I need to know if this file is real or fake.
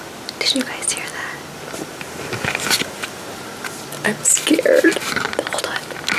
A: real